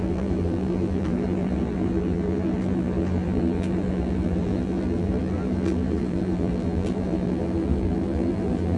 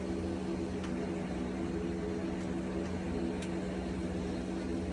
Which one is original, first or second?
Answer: second